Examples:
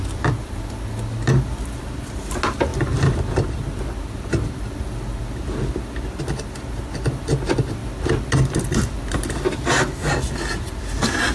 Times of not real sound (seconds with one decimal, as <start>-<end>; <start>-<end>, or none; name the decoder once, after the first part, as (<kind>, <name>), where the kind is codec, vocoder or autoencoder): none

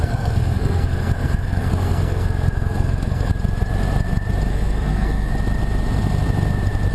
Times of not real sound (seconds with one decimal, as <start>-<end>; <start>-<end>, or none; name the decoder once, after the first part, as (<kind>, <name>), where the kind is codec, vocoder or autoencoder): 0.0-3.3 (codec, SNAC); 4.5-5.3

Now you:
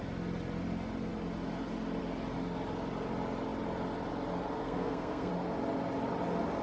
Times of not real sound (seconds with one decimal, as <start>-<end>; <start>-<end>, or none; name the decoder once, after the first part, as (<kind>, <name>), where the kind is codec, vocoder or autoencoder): 4.6-5.3 (codec, SNAC)

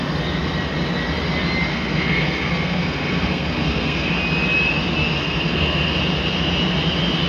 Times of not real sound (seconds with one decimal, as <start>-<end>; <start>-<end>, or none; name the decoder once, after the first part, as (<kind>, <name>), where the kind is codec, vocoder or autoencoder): 1.7-4.1 (codec, SNAC); 5.2-6.0

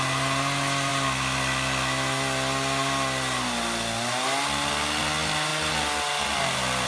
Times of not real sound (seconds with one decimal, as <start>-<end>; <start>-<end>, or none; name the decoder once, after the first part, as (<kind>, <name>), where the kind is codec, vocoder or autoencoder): none

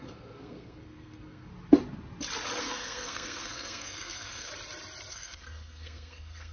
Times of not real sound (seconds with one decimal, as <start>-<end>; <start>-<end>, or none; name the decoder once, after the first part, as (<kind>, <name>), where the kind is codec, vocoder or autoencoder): 0.0-1.5 (codec, SNAC); 2.6-4.5; 5.1-6.5

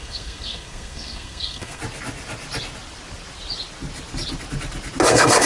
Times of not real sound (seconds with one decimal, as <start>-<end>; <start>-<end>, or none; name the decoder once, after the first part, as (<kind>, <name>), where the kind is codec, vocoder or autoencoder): 0.0-1.8 (codec, SNAC); 5.1-5.5

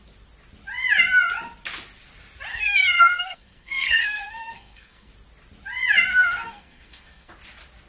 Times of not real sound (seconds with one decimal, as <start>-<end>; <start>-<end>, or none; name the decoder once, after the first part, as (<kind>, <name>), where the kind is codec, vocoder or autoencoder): 2.5-5.1 (codec, SNAC); 6.1-7.3